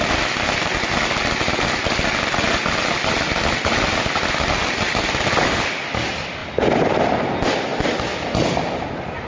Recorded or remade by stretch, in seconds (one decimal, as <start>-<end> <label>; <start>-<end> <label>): 0.0-9.3 recorded